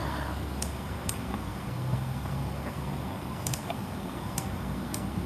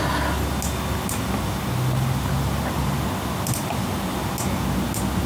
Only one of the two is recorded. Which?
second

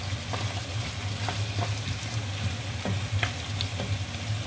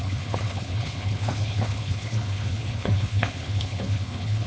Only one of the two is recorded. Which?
first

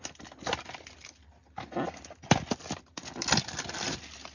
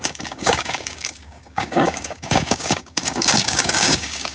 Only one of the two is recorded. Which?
first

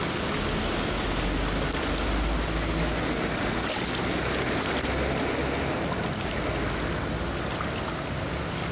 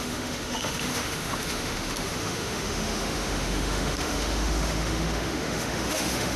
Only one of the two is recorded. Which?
first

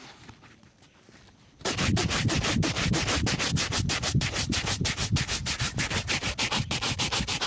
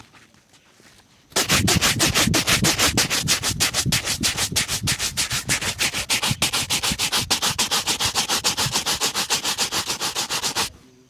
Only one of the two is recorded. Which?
second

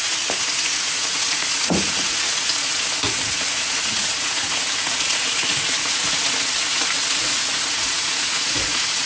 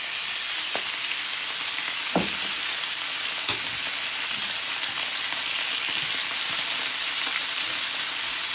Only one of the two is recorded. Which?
second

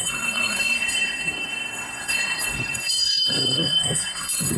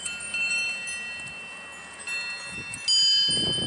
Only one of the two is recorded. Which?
second